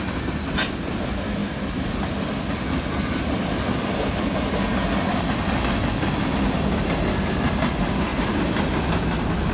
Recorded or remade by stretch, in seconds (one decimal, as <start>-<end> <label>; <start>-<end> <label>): 0.0-9.5 recorded